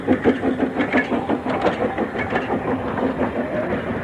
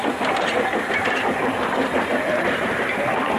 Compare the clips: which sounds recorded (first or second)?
first